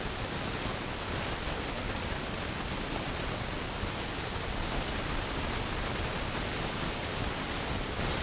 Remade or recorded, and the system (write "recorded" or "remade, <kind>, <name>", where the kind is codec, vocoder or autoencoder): recorded